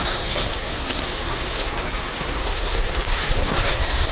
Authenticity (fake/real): fake